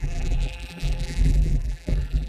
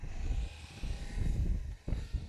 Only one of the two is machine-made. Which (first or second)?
first